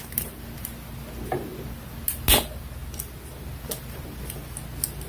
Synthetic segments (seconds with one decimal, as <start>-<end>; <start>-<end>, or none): none